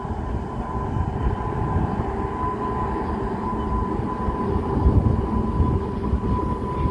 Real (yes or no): yes